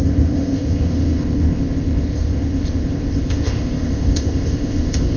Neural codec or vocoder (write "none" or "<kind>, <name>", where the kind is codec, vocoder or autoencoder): codec, ZipCodec